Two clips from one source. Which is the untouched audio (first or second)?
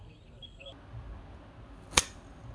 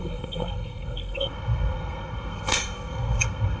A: first